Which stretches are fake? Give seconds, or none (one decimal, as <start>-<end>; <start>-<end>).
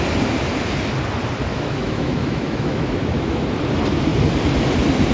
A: 1.5-3.4